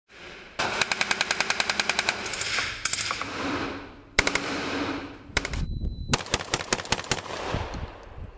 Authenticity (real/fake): fake